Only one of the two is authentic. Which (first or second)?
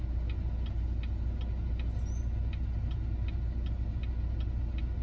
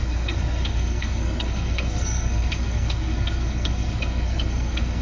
first